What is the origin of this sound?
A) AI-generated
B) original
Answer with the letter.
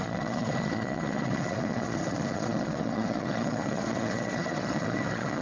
A